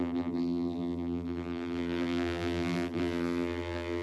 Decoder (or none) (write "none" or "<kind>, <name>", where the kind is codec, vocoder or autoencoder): vocoder, BigVGAN v2